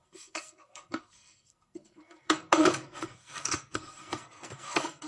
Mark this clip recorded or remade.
remade